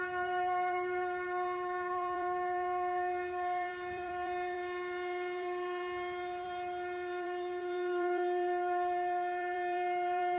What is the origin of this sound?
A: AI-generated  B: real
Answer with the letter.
A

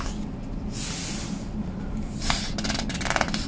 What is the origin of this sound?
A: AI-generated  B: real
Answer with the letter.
B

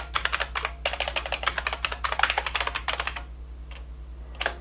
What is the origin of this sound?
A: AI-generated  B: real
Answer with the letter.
B